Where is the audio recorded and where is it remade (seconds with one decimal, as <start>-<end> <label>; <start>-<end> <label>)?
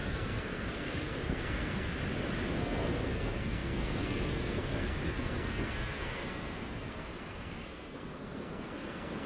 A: 0.0-2.0 remade; 2.0-2.5 recorded; 2.5-9.3 remade